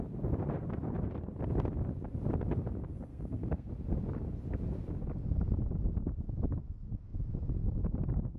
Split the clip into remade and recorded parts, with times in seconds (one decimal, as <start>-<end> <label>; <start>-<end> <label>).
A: 0.0-3.1 recorded; 3.1-3.7 remade; 3.7-8.4 recorded